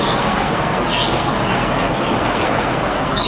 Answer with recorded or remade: remade